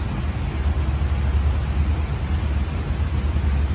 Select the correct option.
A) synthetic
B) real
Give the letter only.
B